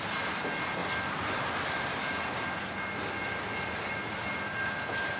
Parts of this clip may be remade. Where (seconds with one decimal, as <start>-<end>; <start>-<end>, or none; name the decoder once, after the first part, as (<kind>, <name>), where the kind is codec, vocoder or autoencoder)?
none